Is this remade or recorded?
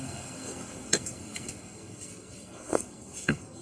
remade